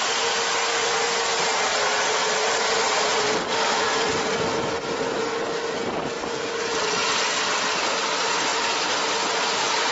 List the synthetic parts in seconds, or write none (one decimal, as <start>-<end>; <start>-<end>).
none